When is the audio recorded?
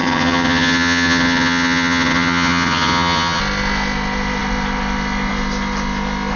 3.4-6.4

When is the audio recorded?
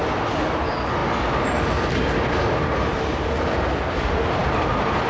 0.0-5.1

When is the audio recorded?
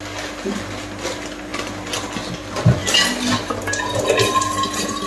0.0-5.1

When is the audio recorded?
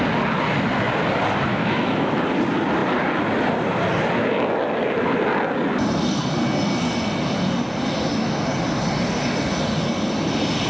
0.0-1.5; 2.1-10.7